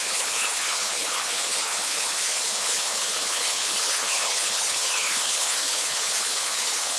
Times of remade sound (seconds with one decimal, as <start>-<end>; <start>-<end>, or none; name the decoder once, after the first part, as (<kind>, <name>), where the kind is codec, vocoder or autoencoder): 0.0-7.0 (codec, HILCodec)